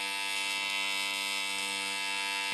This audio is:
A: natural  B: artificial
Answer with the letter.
A